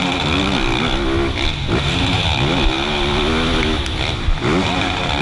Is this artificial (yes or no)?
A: no